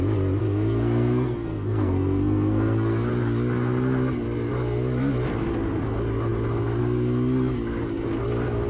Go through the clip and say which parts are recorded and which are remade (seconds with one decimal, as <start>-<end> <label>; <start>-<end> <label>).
0.0-0.4 recorded; 0.4-3.1 remade; 3.1-8.7 recorded